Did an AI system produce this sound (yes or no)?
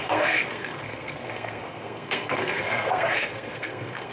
yes